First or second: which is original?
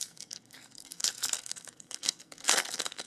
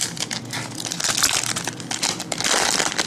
second